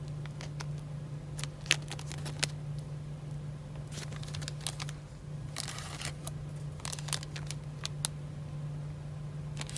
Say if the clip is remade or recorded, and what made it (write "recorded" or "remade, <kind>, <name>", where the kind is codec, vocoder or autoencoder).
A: recorded